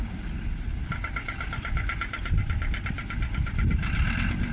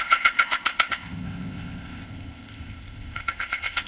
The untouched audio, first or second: first